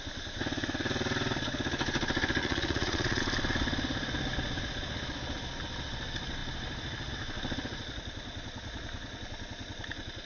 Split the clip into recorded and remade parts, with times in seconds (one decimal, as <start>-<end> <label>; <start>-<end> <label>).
0.0-2.4 recorded; 2.4-3.2 remade; 3.2-10.3 recorded